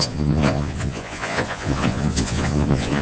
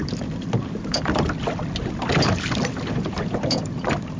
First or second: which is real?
second